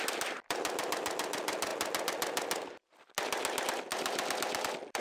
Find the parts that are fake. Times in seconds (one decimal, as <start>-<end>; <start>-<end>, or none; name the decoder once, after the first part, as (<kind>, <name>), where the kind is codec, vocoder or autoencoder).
0.0-1.7 (vocoder, BigVGAN v2); 3.9-5.0